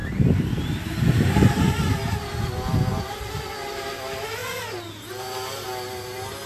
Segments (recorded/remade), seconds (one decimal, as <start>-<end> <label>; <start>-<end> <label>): 0.0-1.7 remade; 1.7-2.9 recorded; 2.9-3.5 remade; 3.5-4.4 recorded; 4.4-5.0 remade; 5.0-6.5 recorded